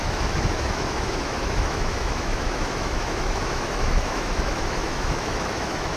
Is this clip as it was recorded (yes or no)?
no